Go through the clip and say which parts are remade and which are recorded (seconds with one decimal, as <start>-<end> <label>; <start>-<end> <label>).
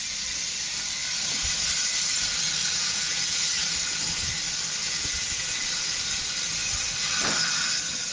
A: 0.0-2.6 recorded; 2.6-3.4 remade; 3.4-4.8 recorded; 4.8-5.6 remade; 5.6-8.1 recorded